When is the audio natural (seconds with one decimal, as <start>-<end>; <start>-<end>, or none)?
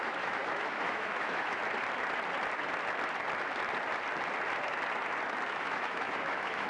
1.6-5.5